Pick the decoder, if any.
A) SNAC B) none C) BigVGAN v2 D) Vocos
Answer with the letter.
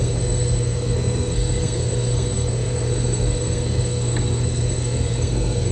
A